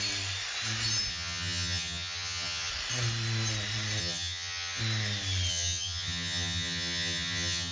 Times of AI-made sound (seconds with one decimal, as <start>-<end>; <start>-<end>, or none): 1.1-2.7; 4.0-4.8; 5.5-7.7

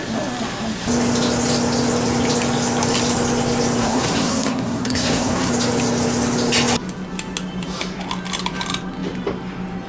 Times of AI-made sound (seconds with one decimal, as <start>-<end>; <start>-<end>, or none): 3.8-5.5

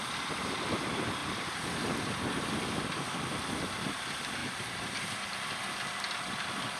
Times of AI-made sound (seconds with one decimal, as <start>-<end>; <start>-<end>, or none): 4.4-5.6

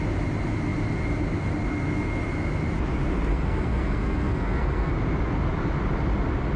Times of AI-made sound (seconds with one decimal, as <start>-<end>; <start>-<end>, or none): 3.3-4.9

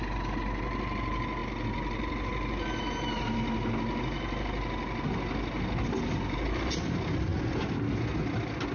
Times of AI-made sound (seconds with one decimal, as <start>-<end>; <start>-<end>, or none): none

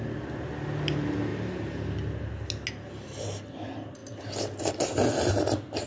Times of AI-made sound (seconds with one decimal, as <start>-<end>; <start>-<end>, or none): none

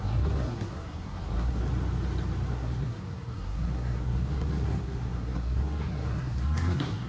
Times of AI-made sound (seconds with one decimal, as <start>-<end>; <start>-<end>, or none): 0.0-1.6; 2.5-7.1